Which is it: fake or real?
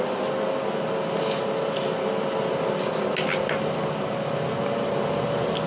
real